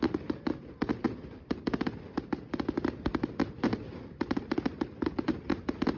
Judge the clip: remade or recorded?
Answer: recorded